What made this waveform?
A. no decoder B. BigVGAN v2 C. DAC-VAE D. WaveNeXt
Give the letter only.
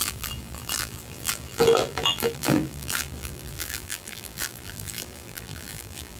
B